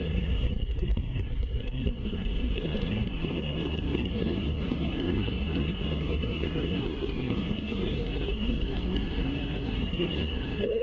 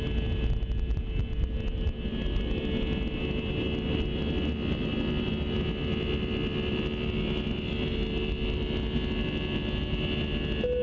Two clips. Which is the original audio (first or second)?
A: second